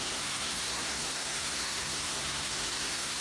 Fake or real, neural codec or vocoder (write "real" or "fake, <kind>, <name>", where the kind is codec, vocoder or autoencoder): fake, codec, SNAC